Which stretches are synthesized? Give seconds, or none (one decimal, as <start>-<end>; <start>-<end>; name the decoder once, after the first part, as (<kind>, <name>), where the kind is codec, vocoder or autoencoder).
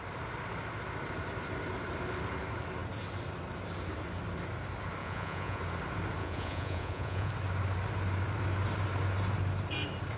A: 5.0-5.6 (vocoder, Vocos); 6.2-7.3